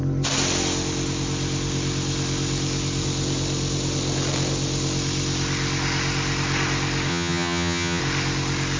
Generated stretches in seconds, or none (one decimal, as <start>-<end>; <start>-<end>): 7.1-8.0